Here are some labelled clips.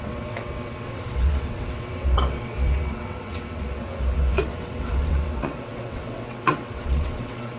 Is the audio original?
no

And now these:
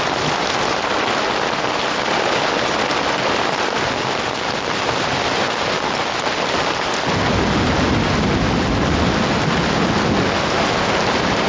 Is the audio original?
yes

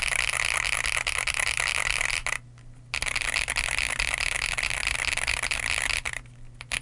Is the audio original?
yes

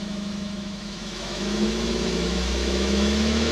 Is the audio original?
no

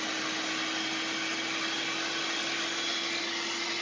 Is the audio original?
yes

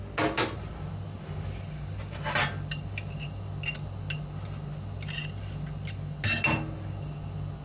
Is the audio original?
yes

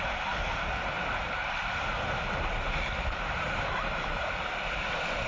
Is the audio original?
yes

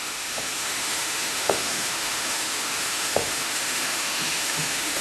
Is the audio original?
no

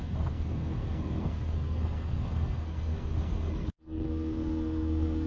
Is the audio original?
no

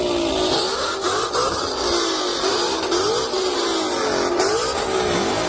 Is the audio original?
yes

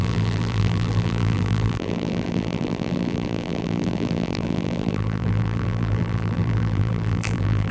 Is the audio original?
no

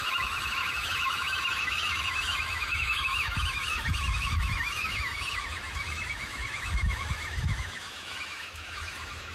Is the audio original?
no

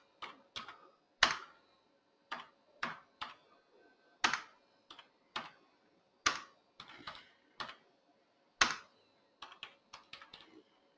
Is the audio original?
yes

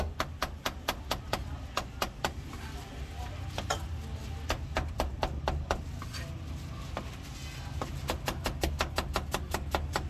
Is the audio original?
yes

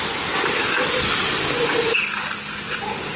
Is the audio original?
no